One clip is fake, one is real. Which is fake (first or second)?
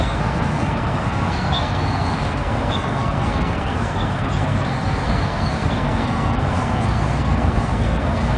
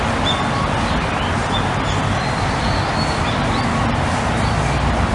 first